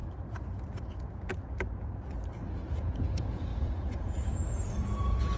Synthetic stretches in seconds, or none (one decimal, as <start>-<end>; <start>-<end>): 0.9-1.3; 2.4-5.4